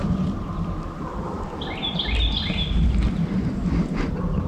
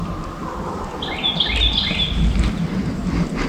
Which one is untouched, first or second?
second